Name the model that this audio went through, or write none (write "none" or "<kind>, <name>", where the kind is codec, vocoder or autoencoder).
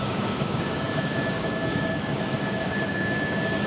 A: codec, DAC